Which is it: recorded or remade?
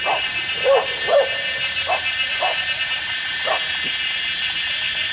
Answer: recorded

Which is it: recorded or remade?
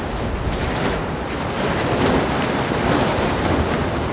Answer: recorded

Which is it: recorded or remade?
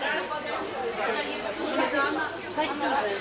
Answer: recorded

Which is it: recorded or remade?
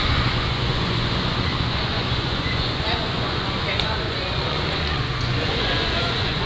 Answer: remade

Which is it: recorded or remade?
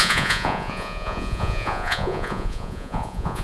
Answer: remade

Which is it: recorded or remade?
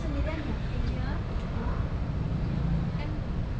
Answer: recorded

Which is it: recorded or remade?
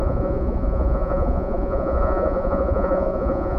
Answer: remade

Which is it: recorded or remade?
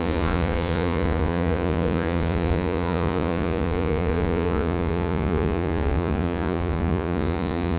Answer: remade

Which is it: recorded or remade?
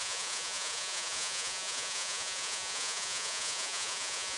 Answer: remade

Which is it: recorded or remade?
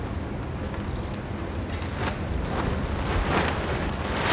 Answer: recorded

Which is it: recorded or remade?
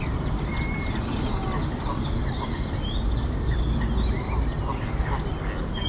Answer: recorded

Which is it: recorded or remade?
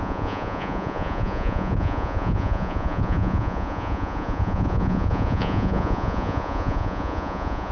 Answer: remade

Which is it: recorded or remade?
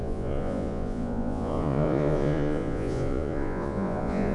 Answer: remade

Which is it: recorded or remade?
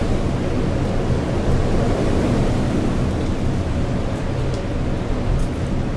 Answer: recorded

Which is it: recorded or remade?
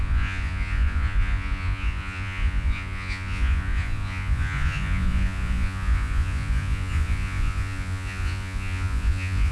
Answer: remade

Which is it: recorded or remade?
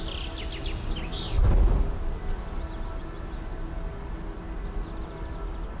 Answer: recorded